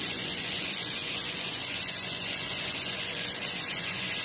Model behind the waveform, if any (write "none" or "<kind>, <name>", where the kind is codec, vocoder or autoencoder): vocoder, Vocos